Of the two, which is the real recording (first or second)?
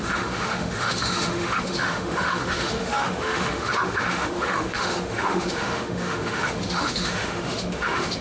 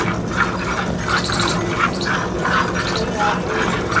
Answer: second